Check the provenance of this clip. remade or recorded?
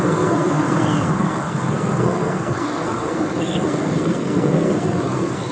remade